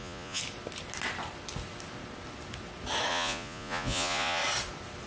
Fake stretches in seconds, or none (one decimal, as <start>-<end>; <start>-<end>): 0.0-0.4; 3.1-4.4